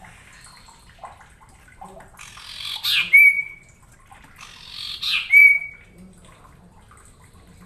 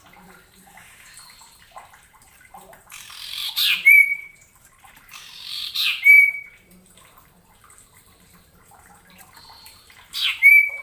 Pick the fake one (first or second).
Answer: second